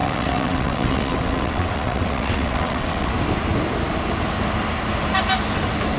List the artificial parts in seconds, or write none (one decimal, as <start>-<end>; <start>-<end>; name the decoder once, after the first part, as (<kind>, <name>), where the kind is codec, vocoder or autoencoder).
0.0-3.1 (vocoder, WaveNeXt)